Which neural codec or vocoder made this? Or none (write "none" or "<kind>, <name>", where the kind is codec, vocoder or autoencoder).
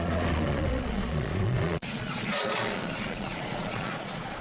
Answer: vocoder, Vocos